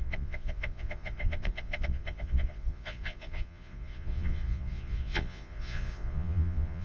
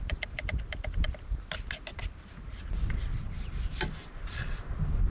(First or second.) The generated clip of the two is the first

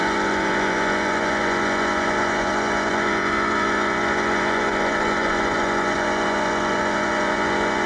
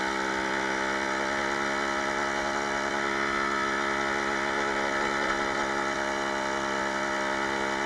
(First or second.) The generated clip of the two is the first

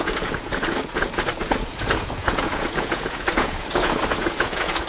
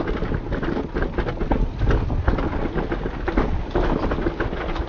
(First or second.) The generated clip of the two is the first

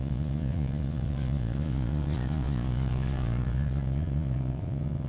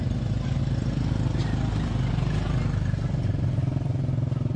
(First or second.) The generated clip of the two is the first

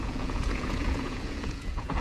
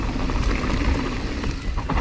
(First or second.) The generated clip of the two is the first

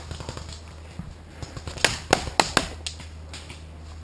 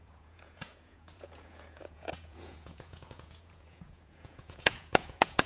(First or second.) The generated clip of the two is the second